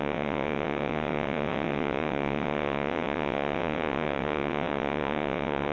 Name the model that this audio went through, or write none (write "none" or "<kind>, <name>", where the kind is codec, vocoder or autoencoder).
vocoder, WaveNeXt